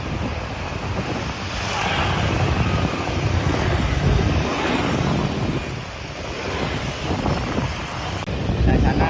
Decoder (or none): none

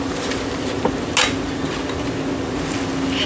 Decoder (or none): none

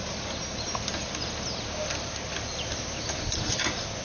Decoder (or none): none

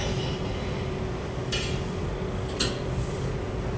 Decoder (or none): none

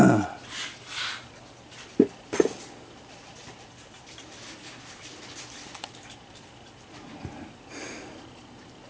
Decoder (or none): none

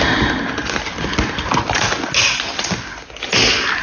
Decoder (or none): none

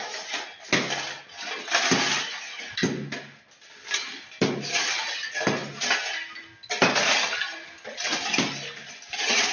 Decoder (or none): none